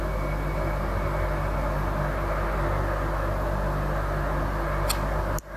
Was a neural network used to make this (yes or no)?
no